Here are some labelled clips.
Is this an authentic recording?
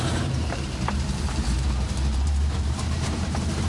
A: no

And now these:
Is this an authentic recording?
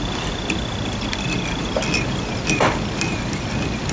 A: no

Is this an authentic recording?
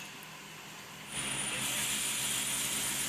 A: yes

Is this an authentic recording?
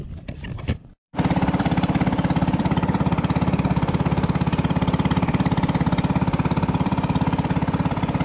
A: no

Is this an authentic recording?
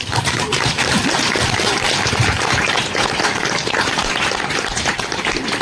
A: no